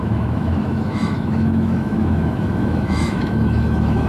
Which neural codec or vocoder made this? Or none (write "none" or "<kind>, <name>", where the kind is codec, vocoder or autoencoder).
autoencoder, DAC-VAE